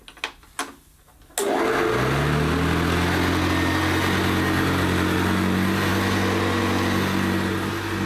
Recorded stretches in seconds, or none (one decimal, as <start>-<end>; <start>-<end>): 0.0-8.1